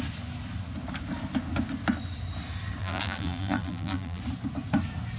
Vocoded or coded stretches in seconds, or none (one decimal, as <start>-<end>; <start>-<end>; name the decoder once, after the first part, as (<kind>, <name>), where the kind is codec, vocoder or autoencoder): 2.8-4.2 (vocoder, BigVGAN v2)